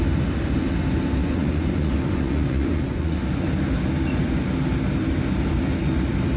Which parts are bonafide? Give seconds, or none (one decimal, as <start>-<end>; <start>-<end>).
0.0-1.2; 3.2-6.4